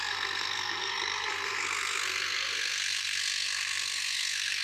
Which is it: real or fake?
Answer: fake